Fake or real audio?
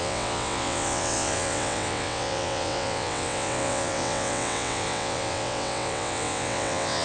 fake